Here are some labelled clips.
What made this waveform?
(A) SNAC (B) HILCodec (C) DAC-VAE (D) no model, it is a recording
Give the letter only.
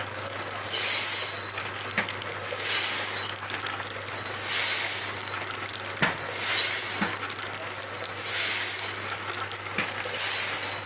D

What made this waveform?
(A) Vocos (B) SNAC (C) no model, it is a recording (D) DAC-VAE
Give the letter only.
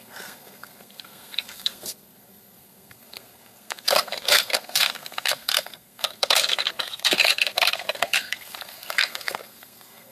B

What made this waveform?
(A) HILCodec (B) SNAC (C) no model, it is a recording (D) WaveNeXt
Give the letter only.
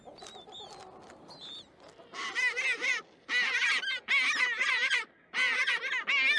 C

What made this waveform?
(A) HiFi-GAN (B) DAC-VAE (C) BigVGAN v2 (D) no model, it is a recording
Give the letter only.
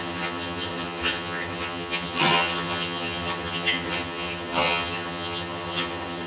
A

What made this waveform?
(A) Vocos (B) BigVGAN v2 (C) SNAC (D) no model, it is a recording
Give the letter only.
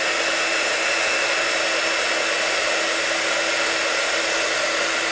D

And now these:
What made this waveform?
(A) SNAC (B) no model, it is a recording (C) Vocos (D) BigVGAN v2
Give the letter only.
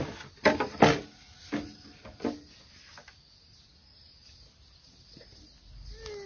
B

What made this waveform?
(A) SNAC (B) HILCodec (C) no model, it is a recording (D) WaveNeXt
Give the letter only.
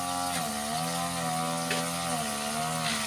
C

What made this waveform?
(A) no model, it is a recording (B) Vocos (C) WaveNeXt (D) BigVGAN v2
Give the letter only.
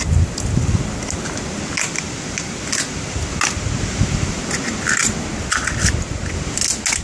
A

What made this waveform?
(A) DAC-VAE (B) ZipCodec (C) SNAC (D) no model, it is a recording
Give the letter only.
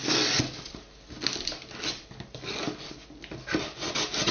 D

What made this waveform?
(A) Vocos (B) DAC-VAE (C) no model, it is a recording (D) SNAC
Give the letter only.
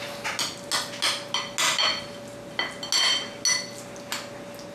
C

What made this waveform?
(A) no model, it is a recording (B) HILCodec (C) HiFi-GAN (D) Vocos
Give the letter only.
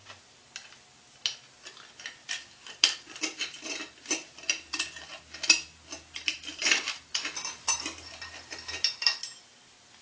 A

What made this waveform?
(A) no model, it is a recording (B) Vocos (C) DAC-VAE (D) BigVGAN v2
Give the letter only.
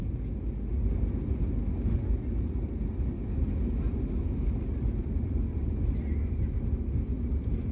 A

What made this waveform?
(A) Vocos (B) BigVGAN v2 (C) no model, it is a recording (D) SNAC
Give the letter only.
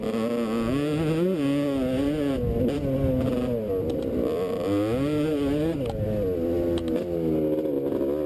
C